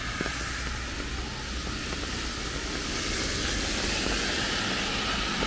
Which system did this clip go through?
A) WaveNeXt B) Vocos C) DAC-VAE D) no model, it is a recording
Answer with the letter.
D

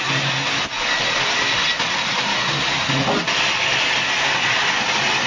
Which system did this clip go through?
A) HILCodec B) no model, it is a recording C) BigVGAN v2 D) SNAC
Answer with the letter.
B